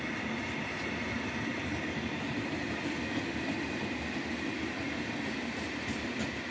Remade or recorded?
recorded